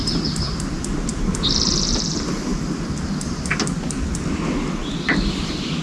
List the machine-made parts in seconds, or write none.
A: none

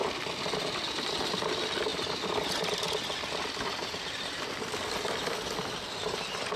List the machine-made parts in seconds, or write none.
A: 0.0-1.5; 1.9-4.5

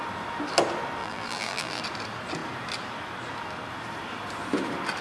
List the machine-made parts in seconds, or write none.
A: 1.0-1.8

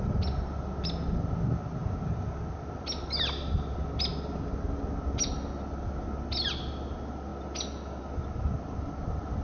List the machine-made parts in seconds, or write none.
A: none

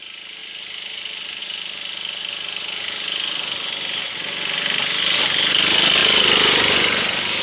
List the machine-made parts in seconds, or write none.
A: 0.4-1.4; 6.0-7.4